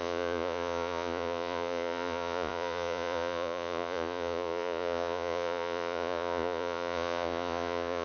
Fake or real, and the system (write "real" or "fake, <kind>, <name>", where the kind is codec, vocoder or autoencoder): fake, vocoder, Vocos